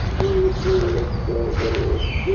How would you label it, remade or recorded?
recorded